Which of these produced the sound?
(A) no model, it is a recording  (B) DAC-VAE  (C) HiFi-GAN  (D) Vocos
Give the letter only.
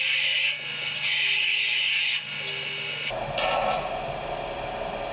A